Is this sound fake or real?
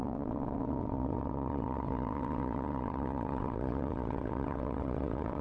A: fake